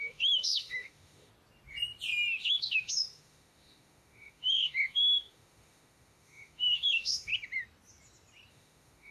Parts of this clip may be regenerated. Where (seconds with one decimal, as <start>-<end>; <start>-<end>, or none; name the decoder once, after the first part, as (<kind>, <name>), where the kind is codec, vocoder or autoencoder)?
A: 0.0-1.3 (autoencoder, DAC-VAE); 2.4-7.3; 8.5-9.1